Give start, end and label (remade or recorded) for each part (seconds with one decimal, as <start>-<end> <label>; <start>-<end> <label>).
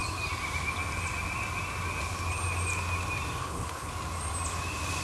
0.0-3.4 recorded; 3.4-3.9 remade; 3.9-5.0 recorded